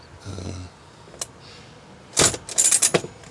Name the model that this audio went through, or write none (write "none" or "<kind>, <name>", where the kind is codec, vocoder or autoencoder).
none